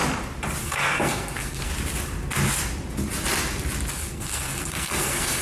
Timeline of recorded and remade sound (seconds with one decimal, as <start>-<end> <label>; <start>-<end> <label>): 0.0-0.6 recorded; 0.6-1.7 remade; 1.7-3.9 recorded; 3.9-5.4 remade